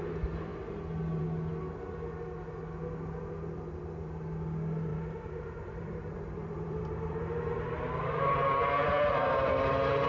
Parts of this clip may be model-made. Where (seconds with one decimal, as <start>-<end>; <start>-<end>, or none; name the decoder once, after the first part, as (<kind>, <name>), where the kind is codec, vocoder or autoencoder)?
4.9-9.1 (vocoder, BigVGAN v2)